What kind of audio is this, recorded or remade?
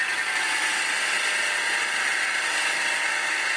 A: recorded